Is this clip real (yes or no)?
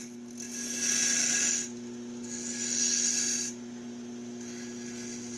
yes